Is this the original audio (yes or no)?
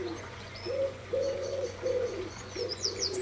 no